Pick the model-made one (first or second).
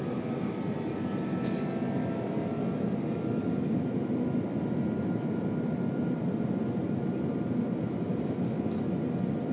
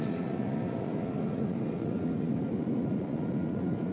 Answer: second